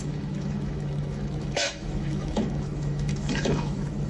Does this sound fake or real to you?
fake